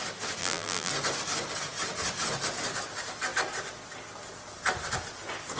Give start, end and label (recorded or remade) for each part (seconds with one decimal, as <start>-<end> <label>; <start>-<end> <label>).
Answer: 0.0-0.4 recorded; 0.4-0.9 remade; 0.9-5.6 recorded